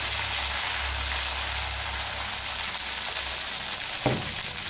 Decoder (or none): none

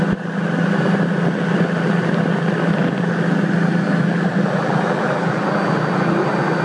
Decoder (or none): none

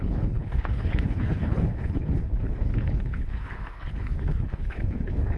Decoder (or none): codec, HILCodec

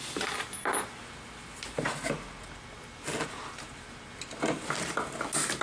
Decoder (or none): none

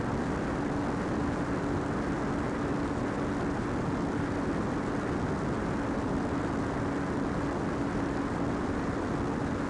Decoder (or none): none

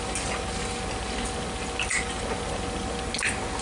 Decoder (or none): none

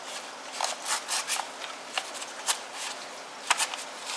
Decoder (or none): none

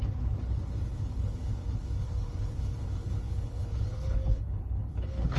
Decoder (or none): codec, HILCodec